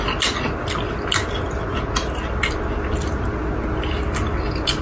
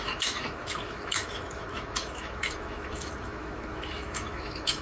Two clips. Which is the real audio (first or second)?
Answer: first